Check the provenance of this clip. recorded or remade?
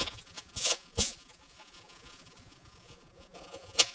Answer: remade